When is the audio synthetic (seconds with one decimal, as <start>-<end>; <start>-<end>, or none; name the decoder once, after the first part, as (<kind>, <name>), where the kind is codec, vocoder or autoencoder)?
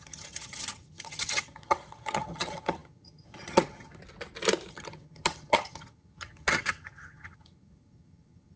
0.0-4.0 (vocoder, HiFi-GAN); 4.7-8.6